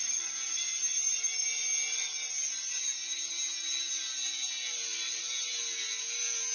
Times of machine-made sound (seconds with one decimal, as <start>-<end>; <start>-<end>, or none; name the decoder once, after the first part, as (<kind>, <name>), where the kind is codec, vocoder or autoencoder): none